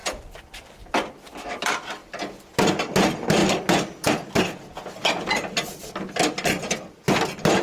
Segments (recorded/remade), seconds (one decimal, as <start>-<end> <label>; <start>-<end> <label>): 0.0-7.6 recorded